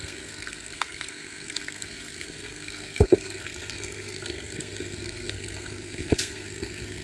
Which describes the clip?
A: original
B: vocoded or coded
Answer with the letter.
B